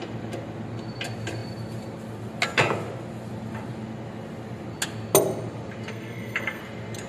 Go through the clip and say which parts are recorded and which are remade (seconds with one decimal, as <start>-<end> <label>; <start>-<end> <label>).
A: 0.0-5.9 recorded; 5.9-6.6 remade; 6.6-7.1 recorded